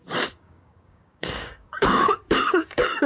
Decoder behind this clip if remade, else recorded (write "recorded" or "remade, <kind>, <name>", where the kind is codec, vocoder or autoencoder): remade, codec, DAC